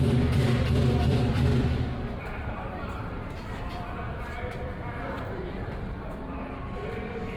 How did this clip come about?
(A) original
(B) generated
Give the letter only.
B